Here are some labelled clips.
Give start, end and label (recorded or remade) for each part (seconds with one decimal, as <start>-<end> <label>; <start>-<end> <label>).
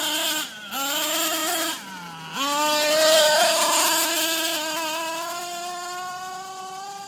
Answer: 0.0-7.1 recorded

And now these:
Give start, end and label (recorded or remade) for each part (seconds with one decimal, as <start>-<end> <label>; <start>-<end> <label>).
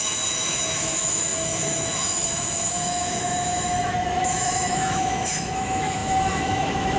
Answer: 0.0-7.0 remade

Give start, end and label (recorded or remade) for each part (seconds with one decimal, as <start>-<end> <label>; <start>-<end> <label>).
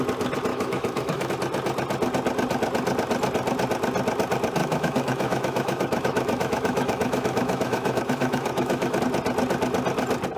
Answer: 0.0-0.5 recorded; 0.5-1.3 remade; 1.3-4.6 recorded; 4.6-9.0 remade; 9.0-10.4 recorded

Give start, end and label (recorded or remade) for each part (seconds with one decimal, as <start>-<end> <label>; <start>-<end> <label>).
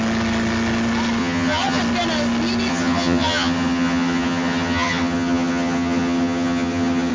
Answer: 0.0-1.2 recorded; 1.2-1.8 remade; 1.8-2.7 recorded; 2.7-7.1 remade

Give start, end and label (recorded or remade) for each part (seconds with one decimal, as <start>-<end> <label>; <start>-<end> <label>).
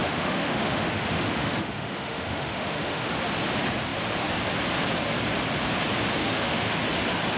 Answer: 0.0-3.1 remade; 3.1-6.2 recorded; 6.2-6.7 remade; 6.7-7.4 recorded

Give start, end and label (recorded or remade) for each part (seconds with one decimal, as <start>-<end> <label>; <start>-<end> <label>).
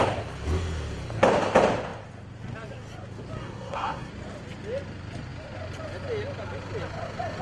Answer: 0.0-3.4 recorded; 3.4-4.1 remade; 4.1-7.4 recorded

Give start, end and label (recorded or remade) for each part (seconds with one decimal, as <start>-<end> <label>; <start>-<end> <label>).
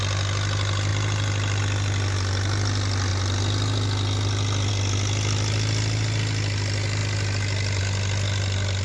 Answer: 0.0-0.9 recorded; 0.9-1.6 remade; 1.6-8.8 recorded